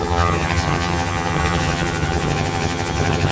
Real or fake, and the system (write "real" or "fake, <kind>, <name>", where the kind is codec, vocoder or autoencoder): fake, vocoder, HiFi-GAN